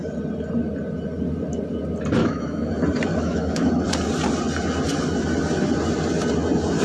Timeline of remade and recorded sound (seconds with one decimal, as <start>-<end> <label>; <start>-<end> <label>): 0.0-2.2 recorded; 2.2-2.7 remade; 2.7-3.1 recorded; 3.1-3.7 remade; 3.7-6.8 recorded